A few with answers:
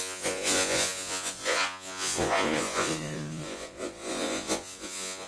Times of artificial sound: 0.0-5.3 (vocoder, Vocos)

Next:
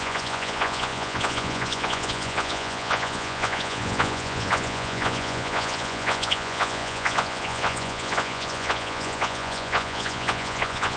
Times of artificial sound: 0.0-11.0 (vocoder, Vocos)

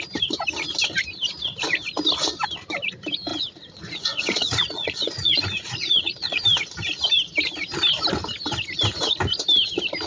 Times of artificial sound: 3.3-6.4 (vocoder, Vocos)

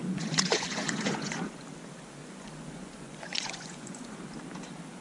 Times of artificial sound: 0.0-1.5 (vocoder, Vocos); 2.2-4.2

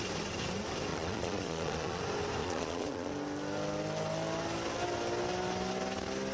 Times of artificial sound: 0.9-2.0 (vocoder, Vocos); 2.4-3.1